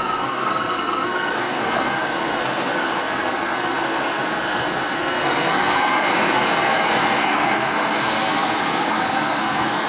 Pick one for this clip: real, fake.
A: fake